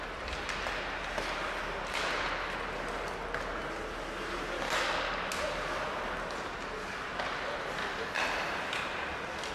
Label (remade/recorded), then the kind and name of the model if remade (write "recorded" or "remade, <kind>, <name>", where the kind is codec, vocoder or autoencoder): recorded